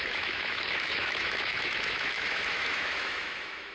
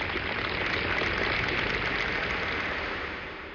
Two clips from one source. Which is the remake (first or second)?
first